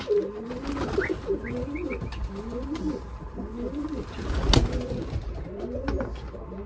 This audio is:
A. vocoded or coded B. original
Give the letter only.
B